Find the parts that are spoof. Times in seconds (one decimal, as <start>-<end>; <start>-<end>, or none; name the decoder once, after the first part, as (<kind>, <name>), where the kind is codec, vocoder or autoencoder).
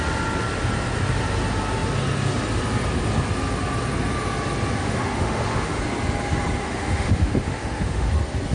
4.8-5.8 (autoencoder, DAC-VAE); 6.6-8.1